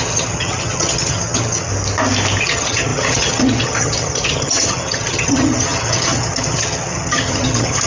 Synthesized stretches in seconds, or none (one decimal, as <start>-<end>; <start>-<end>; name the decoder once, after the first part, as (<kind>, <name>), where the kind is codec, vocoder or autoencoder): 0.0-1.7 (vocoder, HiFi-GAN); 2.4-7.9